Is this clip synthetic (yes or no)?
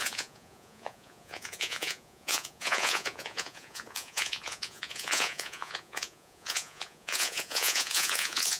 yes